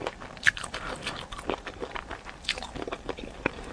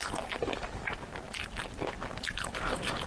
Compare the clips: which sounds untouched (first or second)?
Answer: second